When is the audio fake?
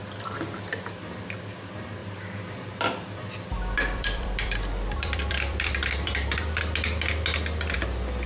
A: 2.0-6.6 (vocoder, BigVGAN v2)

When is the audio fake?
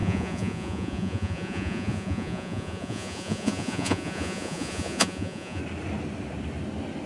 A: 0.0-5.6 (vocoder, Vocos)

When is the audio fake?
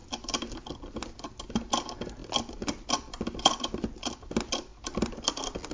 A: none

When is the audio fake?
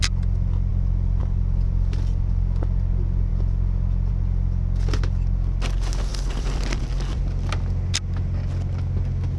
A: 0.7-1.2 (vocoder, BigVGAN v2); 6.1-7.2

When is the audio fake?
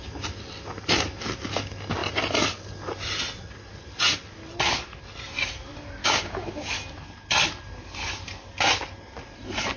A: 6.0-6.7 (codec, DAC)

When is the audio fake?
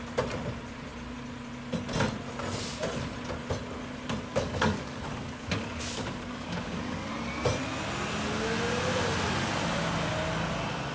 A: 4.3-7.1 (codec, DAC)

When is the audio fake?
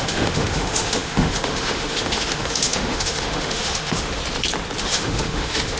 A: 0.0-4.2 (autoencoder, DAC-VAE); 4.8-5.8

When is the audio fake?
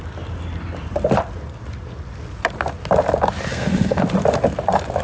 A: 3.5-4.0 (codec, SNAC)